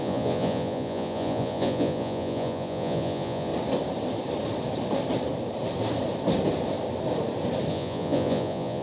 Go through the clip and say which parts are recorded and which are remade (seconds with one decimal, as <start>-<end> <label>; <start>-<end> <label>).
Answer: 0.0-3.5 remade; 3.5-7.7 recorded; 7.7-8.8 remade